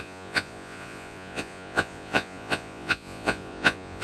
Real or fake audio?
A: fake